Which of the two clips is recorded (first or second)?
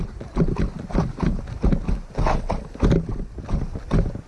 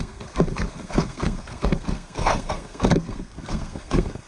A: first